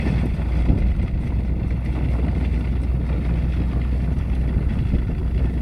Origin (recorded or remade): recorded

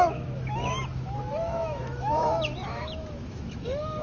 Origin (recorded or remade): remade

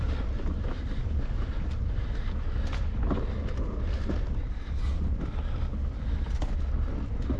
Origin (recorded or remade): recorded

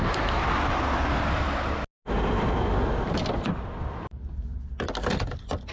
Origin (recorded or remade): recorded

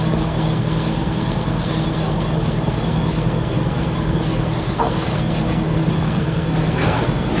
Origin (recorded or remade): remade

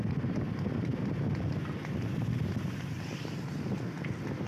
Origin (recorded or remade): recorded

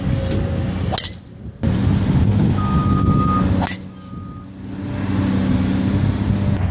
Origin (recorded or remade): recorded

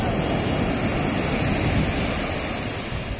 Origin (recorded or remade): recorded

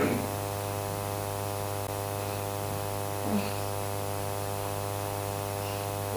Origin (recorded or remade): recorded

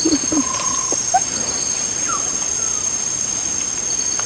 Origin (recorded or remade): recorded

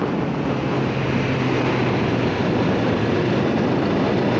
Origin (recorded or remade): recorded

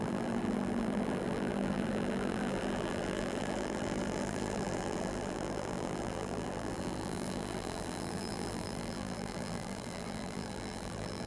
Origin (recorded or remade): remade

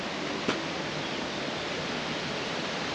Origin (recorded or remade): recorded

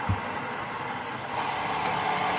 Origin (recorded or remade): recorded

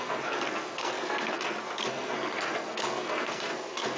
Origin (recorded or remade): remade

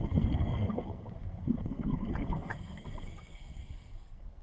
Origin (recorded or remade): remade